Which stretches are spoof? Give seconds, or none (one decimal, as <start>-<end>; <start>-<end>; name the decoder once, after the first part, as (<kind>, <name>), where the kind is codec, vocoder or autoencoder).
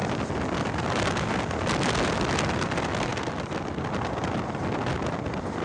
none